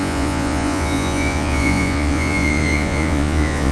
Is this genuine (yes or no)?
no